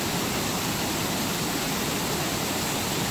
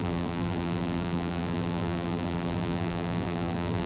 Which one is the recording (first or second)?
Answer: first